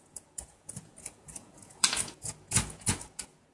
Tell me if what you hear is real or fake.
fake